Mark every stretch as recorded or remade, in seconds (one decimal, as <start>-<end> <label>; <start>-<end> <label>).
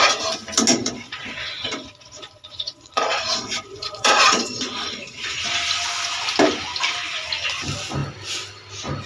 0.0-0.7 recorded; 0.7-5.4 remade; 5.4-9.1 recorded